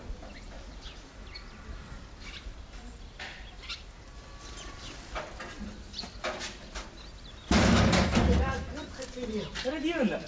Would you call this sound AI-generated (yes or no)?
no